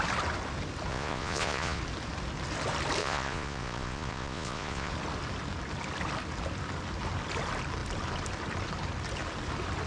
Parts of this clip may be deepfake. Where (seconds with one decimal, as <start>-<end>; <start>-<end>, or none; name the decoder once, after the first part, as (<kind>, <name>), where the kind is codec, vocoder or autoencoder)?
0.9-1.8 (vocoder, Vocos); 3.0-4.9